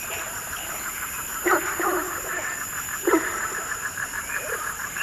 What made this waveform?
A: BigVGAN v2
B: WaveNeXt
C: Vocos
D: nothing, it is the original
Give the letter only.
A